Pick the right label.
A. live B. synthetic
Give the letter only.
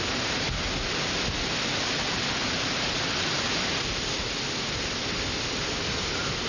A